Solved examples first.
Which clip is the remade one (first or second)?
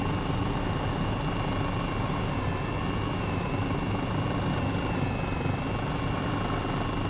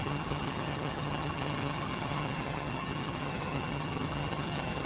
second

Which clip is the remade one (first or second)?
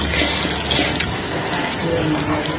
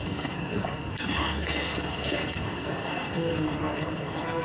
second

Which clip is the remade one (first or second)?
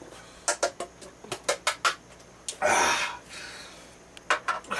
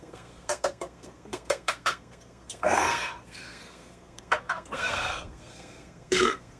second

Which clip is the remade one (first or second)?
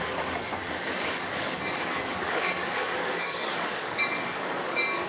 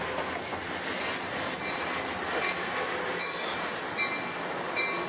first